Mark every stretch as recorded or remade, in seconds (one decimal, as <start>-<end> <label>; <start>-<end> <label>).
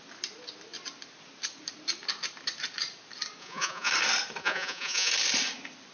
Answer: 0.0-3.4 recorded; 3.4-3.9 remade; 3.9-4.4 recorded; 4.4-5.1 remade; 5.1-5.9 recorded